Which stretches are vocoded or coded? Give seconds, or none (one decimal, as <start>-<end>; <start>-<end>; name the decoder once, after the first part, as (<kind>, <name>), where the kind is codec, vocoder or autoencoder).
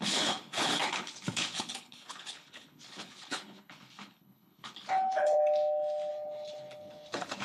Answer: 0.0-5.4 (codec, HILCodec); 6.1-7.4